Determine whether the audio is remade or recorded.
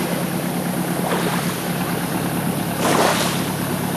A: recorded